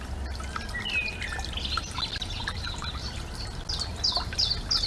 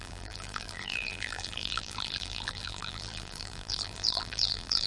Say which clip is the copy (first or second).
second